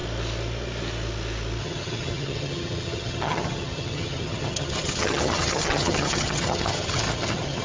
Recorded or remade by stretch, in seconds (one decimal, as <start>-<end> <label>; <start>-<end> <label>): 0.0-1.6 recorded; 1.6-7.6 remade